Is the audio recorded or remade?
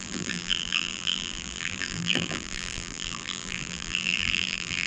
remade